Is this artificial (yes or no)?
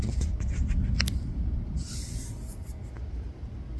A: no